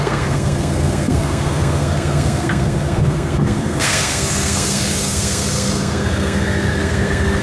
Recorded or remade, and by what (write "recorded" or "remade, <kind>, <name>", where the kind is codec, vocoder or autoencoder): remade, codec, SNAC